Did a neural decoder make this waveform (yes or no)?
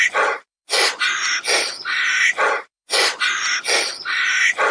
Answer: no